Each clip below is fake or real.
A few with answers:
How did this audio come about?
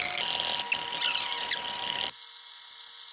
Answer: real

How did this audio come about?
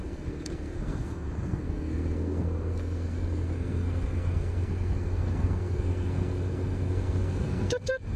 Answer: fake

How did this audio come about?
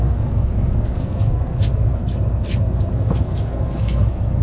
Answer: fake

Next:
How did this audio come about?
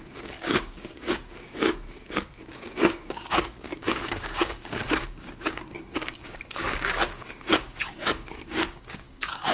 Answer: fake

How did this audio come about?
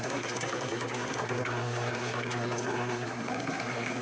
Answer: fake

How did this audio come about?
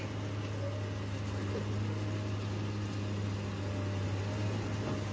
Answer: real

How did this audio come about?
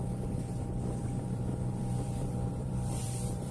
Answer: fake